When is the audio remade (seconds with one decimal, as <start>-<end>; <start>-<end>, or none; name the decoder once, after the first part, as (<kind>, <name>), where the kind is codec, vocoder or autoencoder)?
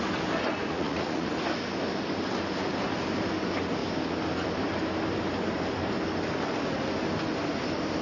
0.7-1.3 (vocoder, Vocos)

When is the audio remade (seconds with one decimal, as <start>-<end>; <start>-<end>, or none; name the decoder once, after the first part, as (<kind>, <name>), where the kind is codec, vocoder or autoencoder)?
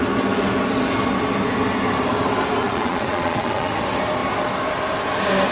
2.6-3.7 (vocoder, Vocos)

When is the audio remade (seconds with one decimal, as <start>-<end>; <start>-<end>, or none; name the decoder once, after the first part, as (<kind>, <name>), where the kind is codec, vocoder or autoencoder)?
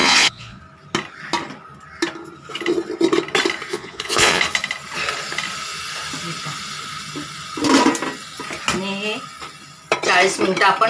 0.0-0.6 (vocoder, Vocos); 3.7-4.4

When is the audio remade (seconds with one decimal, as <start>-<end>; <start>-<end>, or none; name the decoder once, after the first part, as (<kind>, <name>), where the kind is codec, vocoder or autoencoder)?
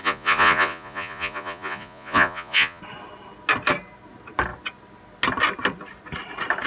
0.0-2.8 (vocoder, Vocos)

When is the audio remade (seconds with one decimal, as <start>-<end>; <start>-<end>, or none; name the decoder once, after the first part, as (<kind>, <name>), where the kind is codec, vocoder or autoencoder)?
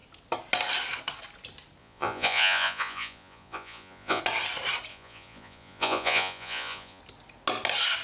1.8-4.2 (vocoder, Vocos); 4.9-7.0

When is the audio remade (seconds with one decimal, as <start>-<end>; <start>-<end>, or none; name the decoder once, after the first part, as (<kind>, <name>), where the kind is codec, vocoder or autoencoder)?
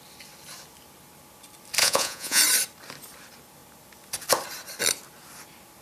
1.8-2.4 (vocoder, Vocos)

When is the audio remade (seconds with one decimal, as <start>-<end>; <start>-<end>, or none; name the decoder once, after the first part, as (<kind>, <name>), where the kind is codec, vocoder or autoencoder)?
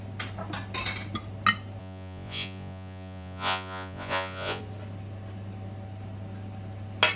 1.8-4.6 (vocoder, Vocos)